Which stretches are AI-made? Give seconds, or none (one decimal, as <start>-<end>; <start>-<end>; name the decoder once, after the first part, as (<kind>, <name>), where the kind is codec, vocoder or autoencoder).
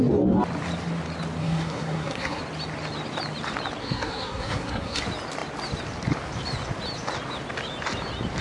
1.4-2.4 (codec, SNAC); 3.8-5.0